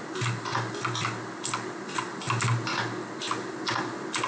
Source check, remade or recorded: recorded